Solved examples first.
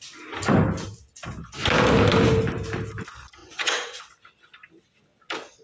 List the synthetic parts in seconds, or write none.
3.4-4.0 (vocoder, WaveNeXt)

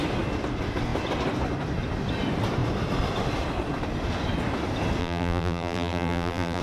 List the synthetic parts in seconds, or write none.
5.0-6.6 (vocoder, BigVGAN v2)